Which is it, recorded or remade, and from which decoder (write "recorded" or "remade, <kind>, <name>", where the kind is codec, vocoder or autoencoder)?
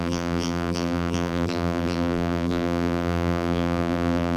remade, vocoder, BigVGAN v2